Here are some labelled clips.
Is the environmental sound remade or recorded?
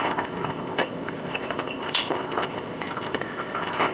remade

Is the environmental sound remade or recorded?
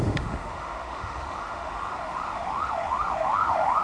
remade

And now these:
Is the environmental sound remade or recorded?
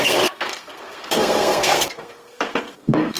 remade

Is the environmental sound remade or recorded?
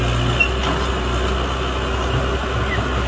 recorded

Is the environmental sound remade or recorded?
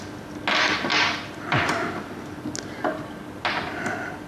recorded